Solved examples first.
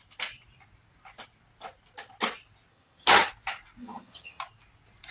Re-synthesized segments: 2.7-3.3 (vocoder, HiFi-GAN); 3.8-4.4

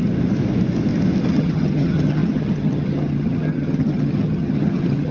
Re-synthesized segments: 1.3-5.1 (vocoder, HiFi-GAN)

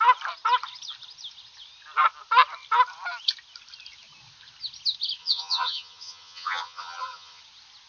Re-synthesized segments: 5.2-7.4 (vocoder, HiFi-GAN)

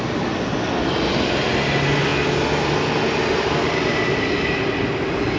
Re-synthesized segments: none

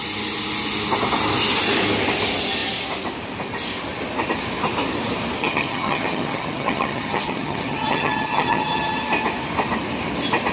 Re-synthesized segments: 5.4-9.0 (vocoder, HiFi-GAN)